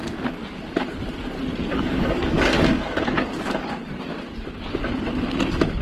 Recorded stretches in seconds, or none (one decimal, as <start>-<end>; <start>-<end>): 0.0-1.7; 3.7-5.8